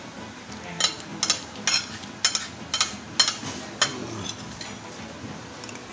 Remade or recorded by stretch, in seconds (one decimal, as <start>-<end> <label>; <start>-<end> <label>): 0.0-5.9 recorded